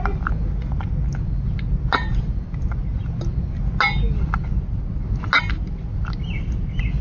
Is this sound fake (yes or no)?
no